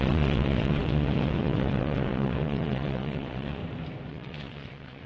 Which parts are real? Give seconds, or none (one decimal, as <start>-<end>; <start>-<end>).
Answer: 3.6-4.1